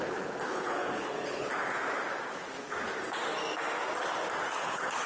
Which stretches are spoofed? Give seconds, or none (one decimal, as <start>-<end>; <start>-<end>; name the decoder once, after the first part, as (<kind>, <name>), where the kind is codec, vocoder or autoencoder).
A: 0.0-1.5 (codec, HILCodec); 4.6-5.1